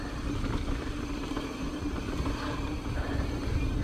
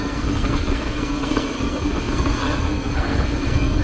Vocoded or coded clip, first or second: second